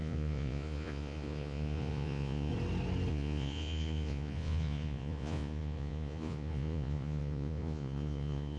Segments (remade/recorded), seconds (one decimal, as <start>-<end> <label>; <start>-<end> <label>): 0.0-2.5 remade; 2.5-3.1 recorded; 3.1-8.6 remade

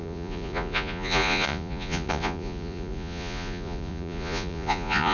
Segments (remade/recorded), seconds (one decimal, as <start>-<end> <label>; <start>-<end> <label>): 0.0-5.1 remade

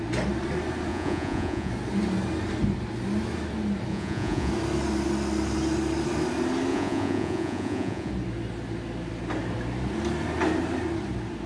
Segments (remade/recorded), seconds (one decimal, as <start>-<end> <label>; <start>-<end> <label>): 0.0-0.9 recorded; 0.9-1.7 remade; 1.7-3.9 recorded; 3.9-4.5 remade; 4.5-6.7 recorded; 6.7-8.1 remade; 8.1-11.5 recorded